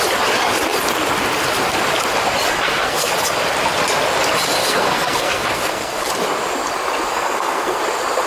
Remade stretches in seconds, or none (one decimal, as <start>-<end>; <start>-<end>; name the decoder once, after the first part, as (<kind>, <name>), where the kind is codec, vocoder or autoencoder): 2.5-3.1 (codec, SNAC); 4.6-6.1; 7.1-7.8